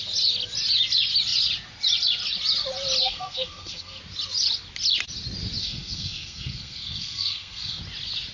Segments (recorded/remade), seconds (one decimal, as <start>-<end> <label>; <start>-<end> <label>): 0.0-3.0 recorded; 3.0-4.0 remade; 4.0-5.6 recorded; 5.6-7.8 remade; 7.8-8.3 recorded